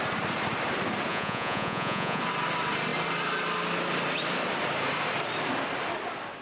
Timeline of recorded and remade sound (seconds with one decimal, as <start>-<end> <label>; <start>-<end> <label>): 0.0-1.1 recorded; 1.1-2.2 remade; 2.2-6.4 recorded